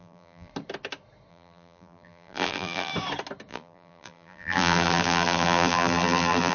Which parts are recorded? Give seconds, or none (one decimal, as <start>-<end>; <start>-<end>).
0.5-1.3; 2.9-3.5